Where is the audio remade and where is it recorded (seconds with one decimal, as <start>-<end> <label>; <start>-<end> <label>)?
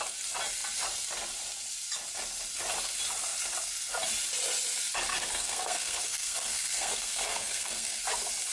0.0-5.1 recorded; 5.1-8.0 remade; 8.0-8.5 recorded